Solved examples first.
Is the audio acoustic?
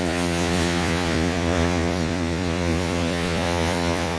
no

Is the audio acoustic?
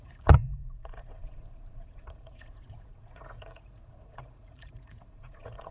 no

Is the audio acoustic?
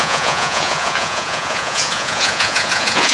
no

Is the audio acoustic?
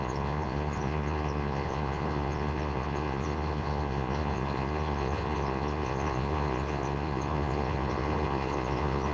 no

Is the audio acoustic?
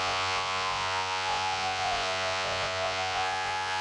no